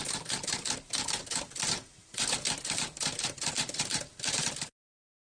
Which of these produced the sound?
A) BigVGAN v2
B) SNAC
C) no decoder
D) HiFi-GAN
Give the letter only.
A